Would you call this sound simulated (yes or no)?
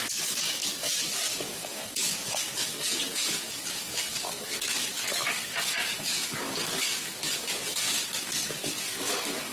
yes